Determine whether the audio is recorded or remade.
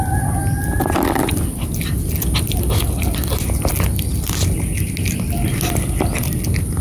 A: recorded